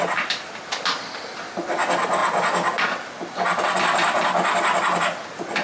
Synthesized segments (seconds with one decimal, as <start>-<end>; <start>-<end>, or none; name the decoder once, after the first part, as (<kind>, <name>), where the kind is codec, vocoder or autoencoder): none